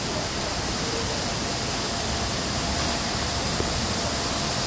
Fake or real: real